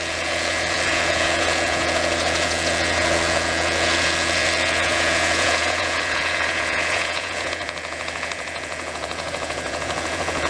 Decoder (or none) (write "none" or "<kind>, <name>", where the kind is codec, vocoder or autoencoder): vocoder, Vocos